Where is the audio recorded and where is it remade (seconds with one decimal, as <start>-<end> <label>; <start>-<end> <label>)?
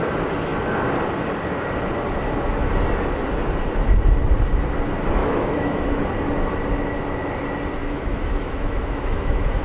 0.0-5.2 recorded; 5.2-6.0 remade; 6.0-7.8 recorded; 7.8-9.6 remade